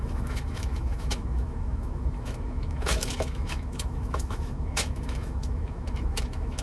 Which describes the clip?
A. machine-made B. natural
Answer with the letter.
A